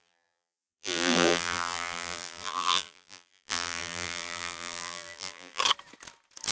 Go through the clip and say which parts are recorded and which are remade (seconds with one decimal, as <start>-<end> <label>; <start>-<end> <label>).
0.0-5.6 remade; 5.6-6.5 recorded